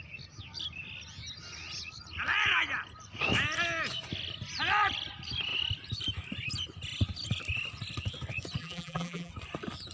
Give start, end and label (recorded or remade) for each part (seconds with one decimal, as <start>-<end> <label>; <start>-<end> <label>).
0.0-8.6 recorded; 8.6-9.3 remade; 9.3-9.9 recorded